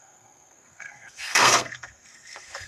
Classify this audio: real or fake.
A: fake